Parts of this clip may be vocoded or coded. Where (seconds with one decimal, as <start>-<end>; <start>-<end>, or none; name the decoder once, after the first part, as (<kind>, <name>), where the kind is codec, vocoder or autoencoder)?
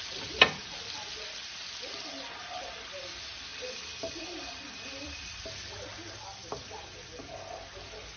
3.5-5.4 (vocoder, BigVGAN v2)